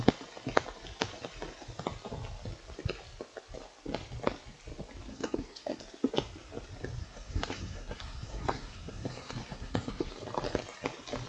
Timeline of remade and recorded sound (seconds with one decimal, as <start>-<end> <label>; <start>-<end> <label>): 0.0-5.1 recorded; 5.1-5.8 remade; 5.8-7.0 recorded; 7.0-10.1 remade; 10.1-11.3 recorded